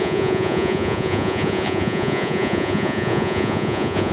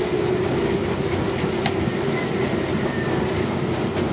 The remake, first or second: first